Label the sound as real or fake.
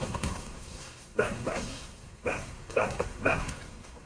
fake